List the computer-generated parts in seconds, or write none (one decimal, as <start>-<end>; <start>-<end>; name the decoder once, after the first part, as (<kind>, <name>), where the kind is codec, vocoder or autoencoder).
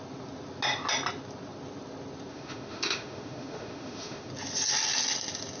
2.3-4.3 (autoencoder, DAC-VAE)